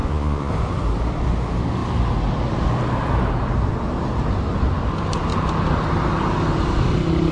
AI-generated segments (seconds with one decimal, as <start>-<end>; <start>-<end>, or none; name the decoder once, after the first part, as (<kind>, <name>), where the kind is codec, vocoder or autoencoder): 0.0-0.5 (vocoder, Vocos)